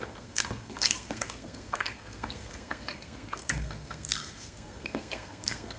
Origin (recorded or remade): remade